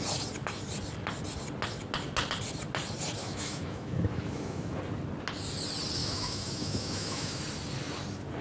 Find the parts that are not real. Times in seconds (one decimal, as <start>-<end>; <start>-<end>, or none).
3.2-4.8; 6.0-7.4